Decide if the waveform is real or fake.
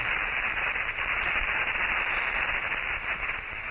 real